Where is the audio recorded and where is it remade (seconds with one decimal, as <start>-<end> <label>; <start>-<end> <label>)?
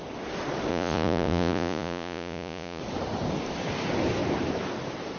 0.0-0.7 recorded; 0.7-2.8 remade; 2.8-5.2 recorded